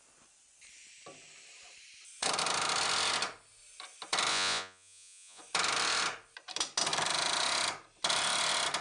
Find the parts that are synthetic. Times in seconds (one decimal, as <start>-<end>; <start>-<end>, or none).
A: 4.3-5.4